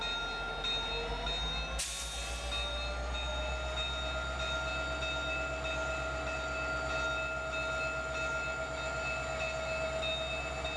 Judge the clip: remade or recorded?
recorded